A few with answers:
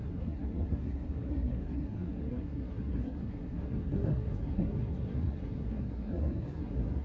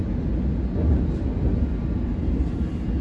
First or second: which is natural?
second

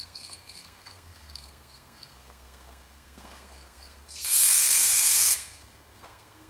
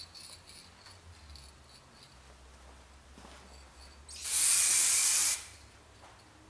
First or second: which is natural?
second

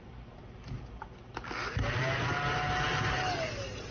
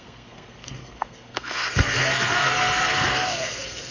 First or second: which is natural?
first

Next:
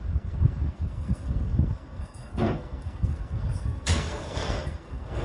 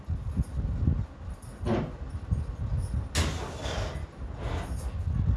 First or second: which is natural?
second